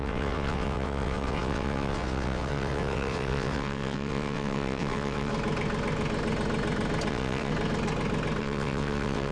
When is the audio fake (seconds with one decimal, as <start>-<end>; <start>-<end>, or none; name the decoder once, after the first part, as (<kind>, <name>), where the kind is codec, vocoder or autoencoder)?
0.0-5.3 (vocoder, WaveNeXt); 7.1-7.5; 8.4-9.3